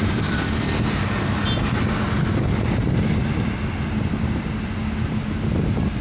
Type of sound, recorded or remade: recorded